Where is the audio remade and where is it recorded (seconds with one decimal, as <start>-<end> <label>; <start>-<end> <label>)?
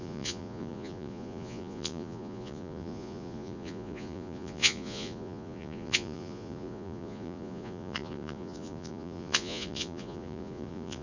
0.0-11.0 remade